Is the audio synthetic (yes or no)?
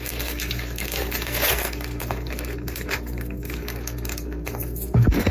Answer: yes